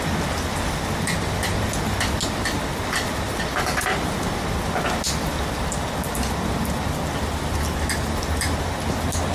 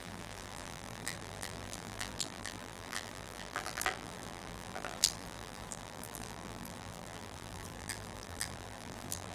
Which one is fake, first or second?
second